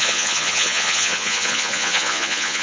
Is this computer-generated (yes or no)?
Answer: yes